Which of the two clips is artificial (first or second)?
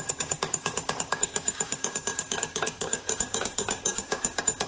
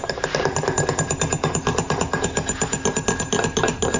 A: first